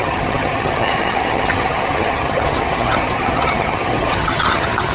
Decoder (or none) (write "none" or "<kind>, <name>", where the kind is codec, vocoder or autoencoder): vocoder, HiFi-GAN